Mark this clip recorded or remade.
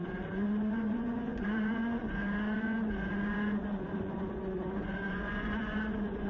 remade